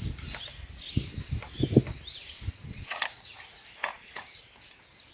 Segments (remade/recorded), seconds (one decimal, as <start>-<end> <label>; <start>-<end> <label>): 0.0-2.6 recorded; 2.6-4.5 remade; 4.5-5.1 recorded